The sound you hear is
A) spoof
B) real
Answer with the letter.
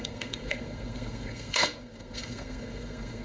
A